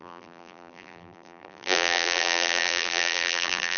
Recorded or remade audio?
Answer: remade